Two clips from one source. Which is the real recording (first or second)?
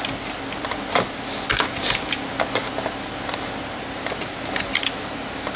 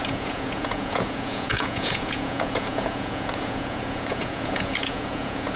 first